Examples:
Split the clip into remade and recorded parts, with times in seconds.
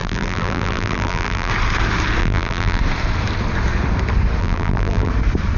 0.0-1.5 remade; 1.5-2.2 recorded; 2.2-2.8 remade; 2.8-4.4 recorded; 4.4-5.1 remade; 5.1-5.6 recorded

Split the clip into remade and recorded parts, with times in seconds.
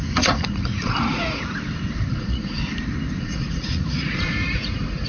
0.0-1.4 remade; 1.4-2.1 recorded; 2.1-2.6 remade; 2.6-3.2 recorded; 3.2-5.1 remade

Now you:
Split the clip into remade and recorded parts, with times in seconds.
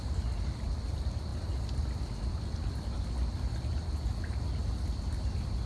0.0-5.7 recorded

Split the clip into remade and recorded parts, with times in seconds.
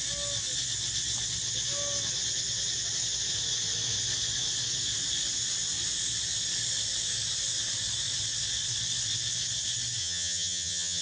0.0-10.0 recorded; 10.0-11.0 remade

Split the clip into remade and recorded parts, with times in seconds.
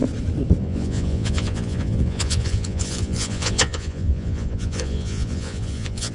0.0-0.6 recorded; 0.6-6.1 remade